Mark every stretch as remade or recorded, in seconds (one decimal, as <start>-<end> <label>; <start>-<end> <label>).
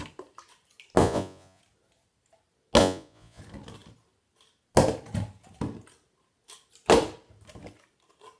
0.0-1.0 recorded; 1.0-1.6 remade; 1.6-2.8 recorded; 2.8-3.4 remade; 3.4-8.4 recorded